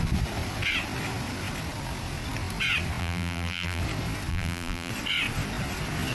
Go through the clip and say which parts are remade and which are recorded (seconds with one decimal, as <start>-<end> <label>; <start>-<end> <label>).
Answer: 0.0-3.0 recorded; 3.0-3.8 remade; 3.8-4.3 recorded; 4.3-4.9 remade; 4.9-6.1 recorded